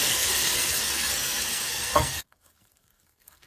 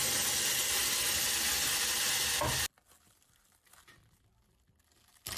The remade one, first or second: first